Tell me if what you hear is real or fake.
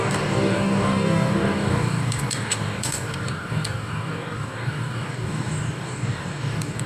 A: fake